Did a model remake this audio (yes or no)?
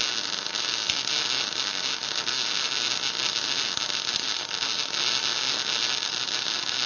no